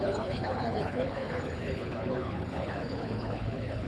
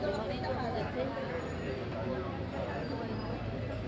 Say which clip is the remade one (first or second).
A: first